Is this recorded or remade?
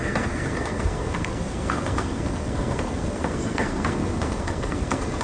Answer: remade